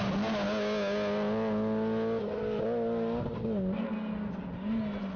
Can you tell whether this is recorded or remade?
recorded